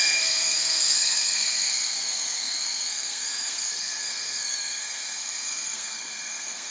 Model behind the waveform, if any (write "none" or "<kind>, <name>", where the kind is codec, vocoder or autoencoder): codec, SNAC